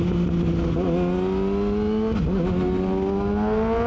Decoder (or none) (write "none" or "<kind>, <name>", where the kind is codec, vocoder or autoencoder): none